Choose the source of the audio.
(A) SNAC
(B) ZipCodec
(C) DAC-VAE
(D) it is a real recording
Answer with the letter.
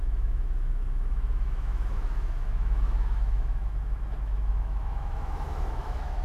C